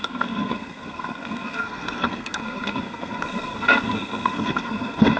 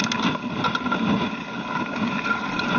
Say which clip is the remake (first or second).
first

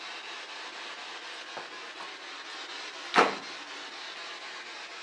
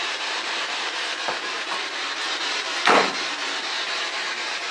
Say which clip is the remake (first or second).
second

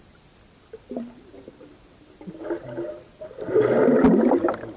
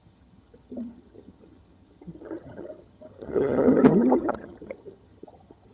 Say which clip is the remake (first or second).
second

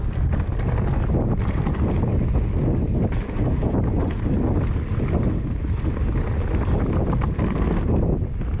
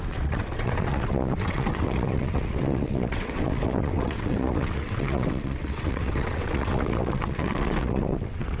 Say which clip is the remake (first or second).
second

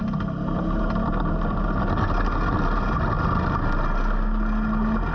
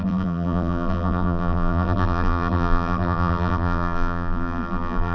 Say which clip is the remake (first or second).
second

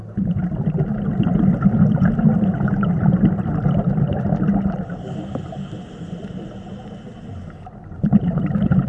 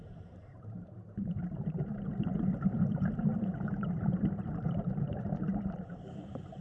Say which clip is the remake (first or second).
second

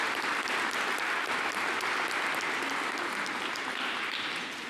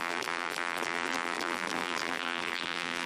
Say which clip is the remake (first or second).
second